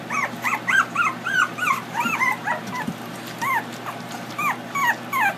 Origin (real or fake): real